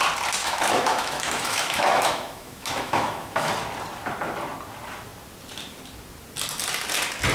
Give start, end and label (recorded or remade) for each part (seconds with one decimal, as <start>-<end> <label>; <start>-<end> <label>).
0.0-0.4 recorded; 0.4-3.5 remade; 3.5-7.3 recorded